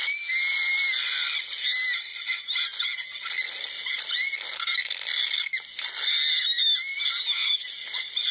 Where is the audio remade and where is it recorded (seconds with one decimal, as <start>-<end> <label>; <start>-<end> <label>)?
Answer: 0.0-8.3 recorded